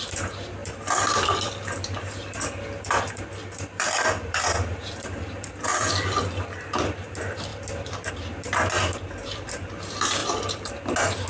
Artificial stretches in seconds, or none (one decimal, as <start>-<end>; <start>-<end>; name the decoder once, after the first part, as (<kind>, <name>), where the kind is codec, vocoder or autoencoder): 0.6-5.2 (vocoder, BigVGAN v2); 5.7-6.9; 10.2-10.7